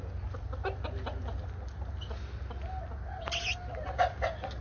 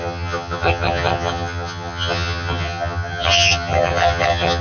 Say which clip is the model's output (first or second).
second